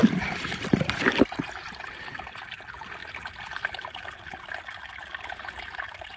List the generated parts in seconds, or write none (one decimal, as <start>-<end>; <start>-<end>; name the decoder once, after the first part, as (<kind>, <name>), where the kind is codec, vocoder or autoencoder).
0.0-1.9 (vocoder, BigVGAN v2)

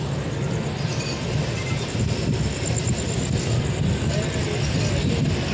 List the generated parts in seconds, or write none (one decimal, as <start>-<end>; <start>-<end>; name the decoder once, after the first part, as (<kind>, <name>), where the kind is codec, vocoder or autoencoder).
none